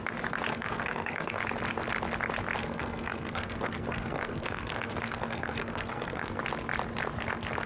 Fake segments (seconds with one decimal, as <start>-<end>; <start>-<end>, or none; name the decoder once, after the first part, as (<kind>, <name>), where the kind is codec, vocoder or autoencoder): 0.5-1.4 (codec, SNAC); 2.6-6.4